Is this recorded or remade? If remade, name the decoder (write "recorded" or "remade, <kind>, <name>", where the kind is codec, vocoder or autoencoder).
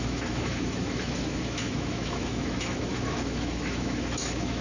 remade, autoencoder, DAC-VAE